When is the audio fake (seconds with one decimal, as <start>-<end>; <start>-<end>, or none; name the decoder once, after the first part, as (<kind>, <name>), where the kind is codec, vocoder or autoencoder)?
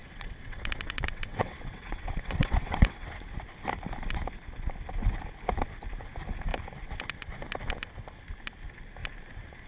0.0-3.1 (vocoder, WaveNeXt)